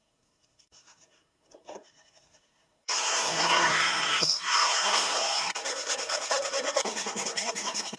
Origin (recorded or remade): remade